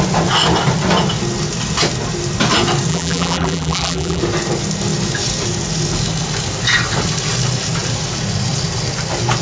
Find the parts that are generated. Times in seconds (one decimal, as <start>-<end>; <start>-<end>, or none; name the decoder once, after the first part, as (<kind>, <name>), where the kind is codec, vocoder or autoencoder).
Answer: 2.9-4.2 (vocoder, BigVGAN v2)